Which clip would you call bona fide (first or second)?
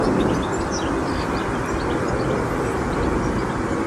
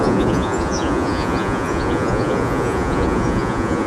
first